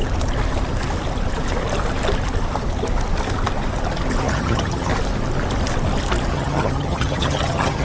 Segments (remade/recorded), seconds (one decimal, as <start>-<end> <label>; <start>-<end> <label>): 0.0-4.2 recorded; 4.2-4.9 remade; 4.9-6.3 recorded; 6.3-7.8 remade